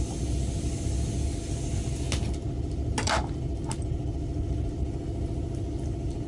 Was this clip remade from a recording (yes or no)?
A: no